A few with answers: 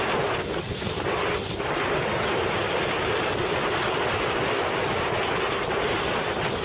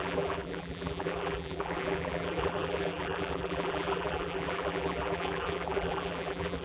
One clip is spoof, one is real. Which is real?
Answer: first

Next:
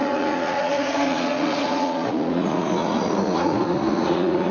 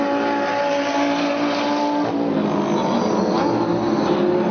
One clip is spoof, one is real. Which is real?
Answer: second